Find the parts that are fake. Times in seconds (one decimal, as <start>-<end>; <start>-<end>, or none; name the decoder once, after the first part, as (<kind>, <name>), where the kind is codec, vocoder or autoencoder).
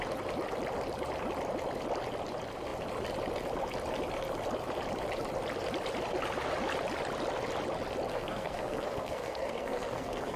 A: 8.1-10.4 (codec, SNAC)